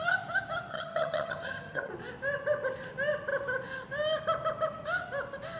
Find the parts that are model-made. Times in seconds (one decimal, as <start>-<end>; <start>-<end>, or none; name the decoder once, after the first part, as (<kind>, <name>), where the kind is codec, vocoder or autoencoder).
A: 0.7-1.9 (vocoder, HiFi-GAN)